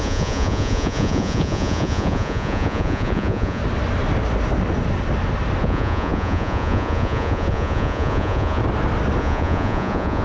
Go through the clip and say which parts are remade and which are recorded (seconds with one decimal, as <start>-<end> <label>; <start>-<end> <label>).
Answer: 0.0-3.6 remade; 3.6-5.6 recorded; 5.6-8.6 remade; 8.6-9.2 recorded; 9.2-10.2 remade